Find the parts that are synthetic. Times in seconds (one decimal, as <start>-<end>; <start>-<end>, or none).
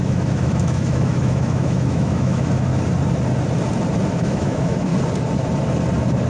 0.0-2.7; 4.1-4.9